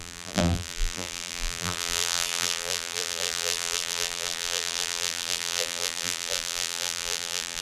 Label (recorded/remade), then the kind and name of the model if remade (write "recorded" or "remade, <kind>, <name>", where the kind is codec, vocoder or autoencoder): remade, vocoder, BigVGAN v2